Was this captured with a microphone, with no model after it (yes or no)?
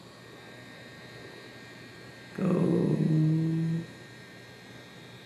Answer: yes